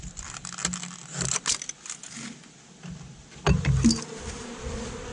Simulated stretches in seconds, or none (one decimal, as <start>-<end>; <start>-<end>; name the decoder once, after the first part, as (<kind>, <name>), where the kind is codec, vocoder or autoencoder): none

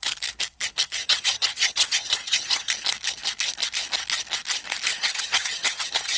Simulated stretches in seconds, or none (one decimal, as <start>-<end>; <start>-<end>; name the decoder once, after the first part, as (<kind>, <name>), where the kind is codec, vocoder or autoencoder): 1.0-2.7 (vocoder, HiFi-GAN); 4.9-6.2

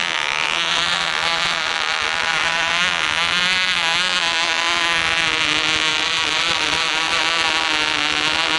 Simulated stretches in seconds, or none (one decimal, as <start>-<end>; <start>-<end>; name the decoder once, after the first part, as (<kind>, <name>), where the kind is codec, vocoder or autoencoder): 0.0-2.7 (vocoder, BigVGAN v2); 5.9-7.2

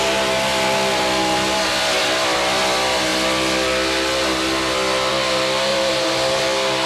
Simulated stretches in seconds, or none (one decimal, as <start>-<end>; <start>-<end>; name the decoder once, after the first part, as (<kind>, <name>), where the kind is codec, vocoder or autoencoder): 5.7-6.4 (vocoder, BigVGAN v2)